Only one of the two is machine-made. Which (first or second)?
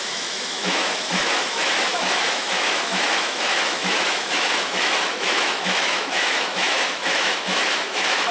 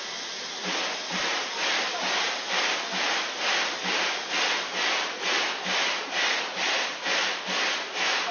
first